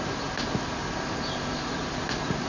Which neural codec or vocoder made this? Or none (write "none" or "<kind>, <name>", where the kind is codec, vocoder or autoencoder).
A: none